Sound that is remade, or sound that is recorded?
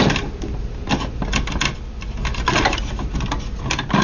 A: recorded